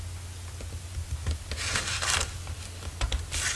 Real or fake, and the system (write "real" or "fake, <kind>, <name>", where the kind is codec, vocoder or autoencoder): real